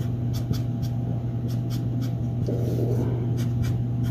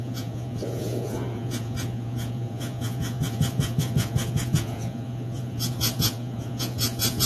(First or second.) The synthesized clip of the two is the second